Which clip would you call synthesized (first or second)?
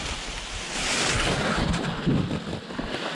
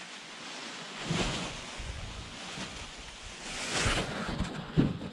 second